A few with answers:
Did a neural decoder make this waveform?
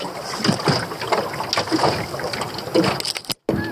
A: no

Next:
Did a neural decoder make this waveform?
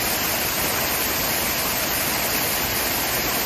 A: no